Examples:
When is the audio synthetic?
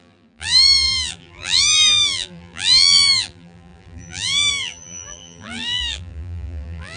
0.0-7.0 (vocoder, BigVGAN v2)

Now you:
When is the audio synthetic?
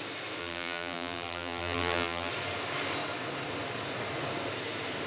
0.4-2.3 (vocoder, BigVGAN v2)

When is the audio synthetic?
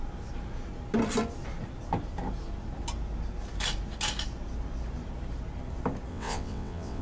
6.1-7.0 (vocoder, WaveNeXt)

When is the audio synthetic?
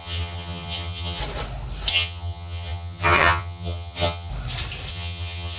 0.0-1.2 (vocoder, HiFi-GAN); 1.9-4.3; 4.9-5.6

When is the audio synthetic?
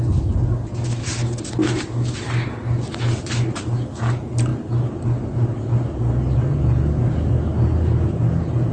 none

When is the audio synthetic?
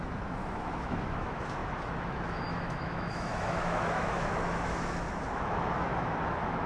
0.0-6.7 (autoencoder, DAC-VAE)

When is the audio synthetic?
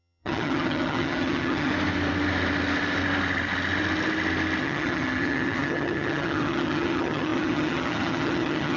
0.0-1.7 (vocoder, HiFi-GAN); 4.6-8.8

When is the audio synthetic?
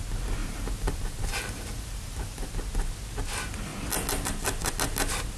0.4-2.5 (vocoder, BigVGAN v2)